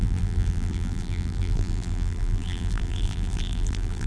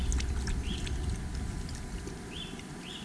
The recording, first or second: second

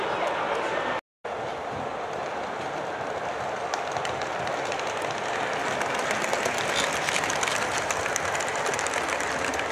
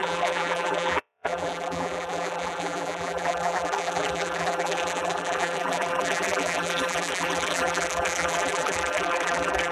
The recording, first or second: first